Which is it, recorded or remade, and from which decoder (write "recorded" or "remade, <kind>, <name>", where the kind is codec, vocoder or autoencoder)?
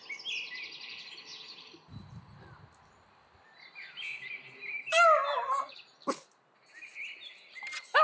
recorded